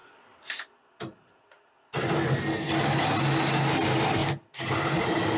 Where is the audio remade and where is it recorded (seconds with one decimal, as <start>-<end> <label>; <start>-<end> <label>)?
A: 0.0-0.6 remade; 0.6-5.4 recorded

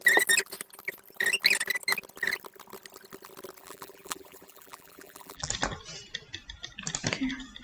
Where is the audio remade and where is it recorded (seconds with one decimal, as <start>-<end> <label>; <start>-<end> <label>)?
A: 0.0-3.6 recorded; 3.6-5.5 remade; 5.5-7.6 recorded

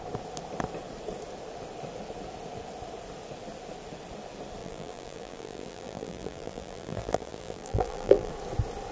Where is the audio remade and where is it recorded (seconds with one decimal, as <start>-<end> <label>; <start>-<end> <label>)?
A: 0.0-4.6 recorded; 4.6-8.3 remade; 8.3-8.9 recorded

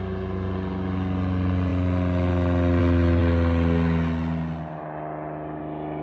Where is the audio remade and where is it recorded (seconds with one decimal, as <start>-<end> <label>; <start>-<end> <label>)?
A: 0.0-6.0 recorded

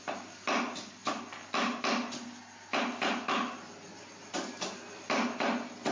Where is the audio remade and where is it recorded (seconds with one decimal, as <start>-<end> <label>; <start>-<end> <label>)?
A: 0.0-5.9 recorded

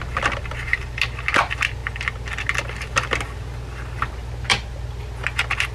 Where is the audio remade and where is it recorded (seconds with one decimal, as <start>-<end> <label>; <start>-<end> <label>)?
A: 0.0-5.7 recorded

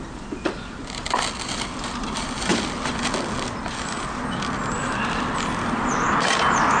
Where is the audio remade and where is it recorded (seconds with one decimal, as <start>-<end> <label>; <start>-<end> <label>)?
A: 0.0-0.8 remade; 0.8-1.8 recorded; 1.8-2.5 remade; 2.5-5.7 recorded; 5.7-6.8 remade